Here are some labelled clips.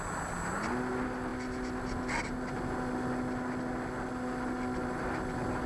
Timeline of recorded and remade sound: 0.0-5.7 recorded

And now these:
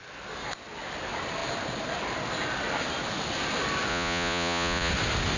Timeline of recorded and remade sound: 0.0-3.9 recorded; 3.9-4.9 remade; 4.9-5.4 recorded

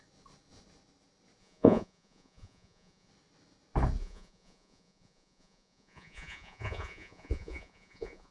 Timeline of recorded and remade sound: 0.0-1.4 recorded; 1.4-3.1 remade; 3.1-4.0 recorded; 4.0-8.3 remade

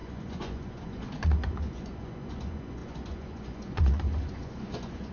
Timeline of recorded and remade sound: 0.0-5.1 remade

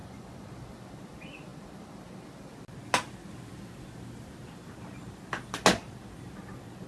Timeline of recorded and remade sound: 0.0-0.5 remade; 0.5-6.9 recorded

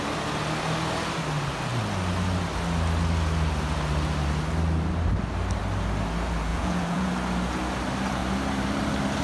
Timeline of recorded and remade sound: 0.0-6.5 recorded; 6.5-7.1 remade; 7.1-9.2 recorded

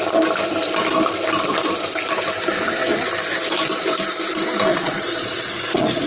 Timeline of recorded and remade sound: 0.0-4.7 recorded; 4.7-6.1 remade

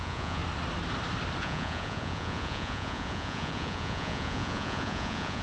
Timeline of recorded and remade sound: 0.0-0.4 remade; 0.4-1.4 recorded; 1.4-5.4 remade